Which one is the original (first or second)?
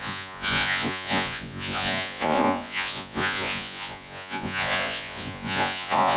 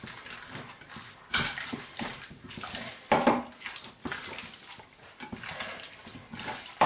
second